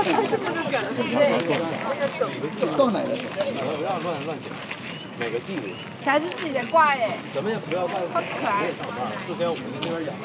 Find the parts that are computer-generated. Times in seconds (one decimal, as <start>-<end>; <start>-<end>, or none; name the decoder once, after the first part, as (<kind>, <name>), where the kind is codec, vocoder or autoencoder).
none